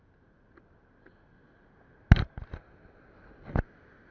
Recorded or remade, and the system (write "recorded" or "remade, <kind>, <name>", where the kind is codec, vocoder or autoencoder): recorded